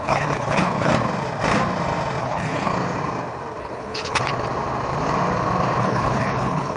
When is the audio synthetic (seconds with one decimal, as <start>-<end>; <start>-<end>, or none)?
0.0-0.9; 2.2-2.7; 3.6-4.2; 5.8-6.8